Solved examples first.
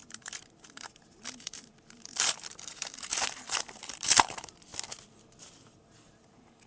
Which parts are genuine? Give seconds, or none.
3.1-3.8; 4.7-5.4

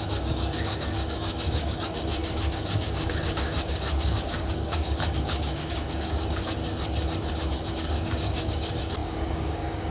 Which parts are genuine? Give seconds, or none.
6.6-7.7